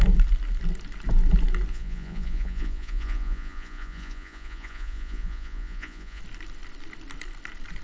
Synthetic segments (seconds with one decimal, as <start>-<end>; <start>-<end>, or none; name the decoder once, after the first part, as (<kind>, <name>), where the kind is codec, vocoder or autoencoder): 1.7-6.2 (vocoder, Vocos)